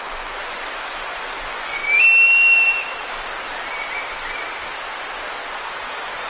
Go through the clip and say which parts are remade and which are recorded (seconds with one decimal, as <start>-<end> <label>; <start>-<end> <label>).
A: 0.0-1.8 remade; 1.8-5.5 recorded; 5.5-6.3 remade